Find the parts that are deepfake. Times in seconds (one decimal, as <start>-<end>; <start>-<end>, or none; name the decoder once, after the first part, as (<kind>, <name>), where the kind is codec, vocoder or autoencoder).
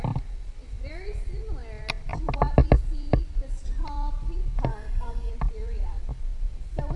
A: 4.7-5.3 (codec, DAC)